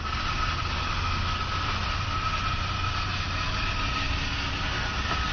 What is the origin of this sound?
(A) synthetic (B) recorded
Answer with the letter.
B